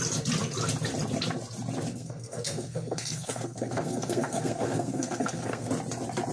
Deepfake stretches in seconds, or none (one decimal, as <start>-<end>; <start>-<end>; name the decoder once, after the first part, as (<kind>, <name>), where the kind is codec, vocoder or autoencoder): 1.9-5.7 (codec, SNAC)